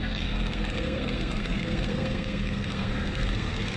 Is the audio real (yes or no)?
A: no